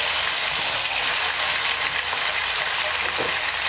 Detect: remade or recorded recorded